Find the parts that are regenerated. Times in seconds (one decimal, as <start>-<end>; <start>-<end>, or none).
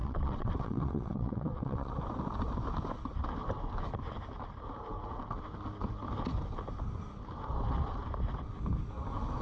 0.0-1.9